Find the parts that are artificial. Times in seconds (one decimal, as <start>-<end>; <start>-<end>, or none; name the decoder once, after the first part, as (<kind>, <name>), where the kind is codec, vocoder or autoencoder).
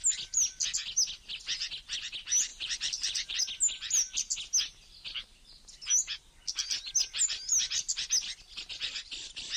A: 2.5-3.4 (vocoder, BigVGAN v2)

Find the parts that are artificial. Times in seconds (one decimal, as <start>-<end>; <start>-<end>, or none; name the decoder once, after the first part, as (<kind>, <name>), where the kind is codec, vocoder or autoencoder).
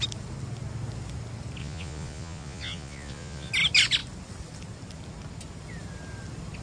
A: 1.6-3.5 (vocoder, Vocos)